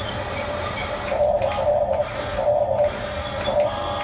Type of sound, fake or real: real